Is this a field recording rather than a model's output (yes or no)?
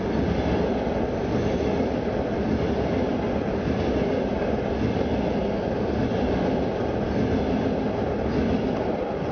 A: yes